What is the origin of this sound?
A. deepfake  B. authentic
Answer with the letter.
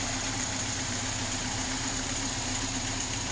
A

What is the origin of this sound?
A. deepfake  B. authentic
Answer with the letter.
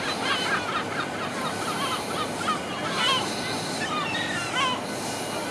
B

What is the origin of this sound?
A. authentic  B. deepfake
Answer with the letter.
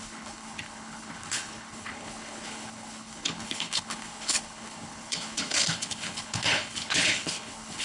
B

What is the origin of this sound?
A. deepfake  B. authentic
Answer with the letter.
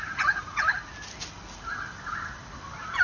B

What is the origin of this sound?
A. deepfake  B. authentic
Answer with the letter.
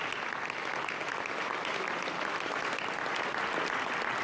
B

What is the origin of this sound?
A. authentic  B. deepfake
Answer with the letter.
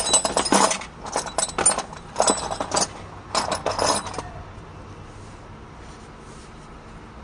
A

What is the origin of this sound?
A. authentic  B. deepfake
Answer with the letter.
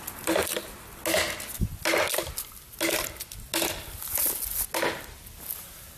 A